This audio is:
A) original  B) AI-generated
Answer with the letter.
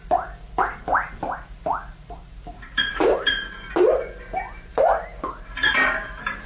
B